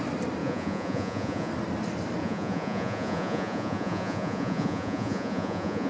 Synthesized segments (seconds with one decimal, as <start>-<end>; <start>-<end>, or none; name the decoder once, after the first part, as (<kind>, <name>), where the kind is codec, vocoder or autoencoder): 0.4-1.5 (vocoder, Vocos); 2.2-5.9